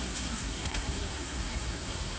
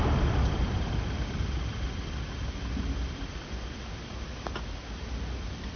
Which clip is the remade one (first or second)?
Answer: first